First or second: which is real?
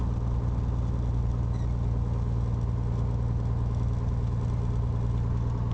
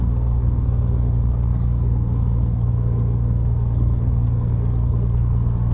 first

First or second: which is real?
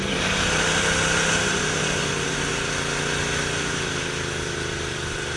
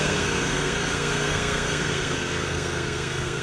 first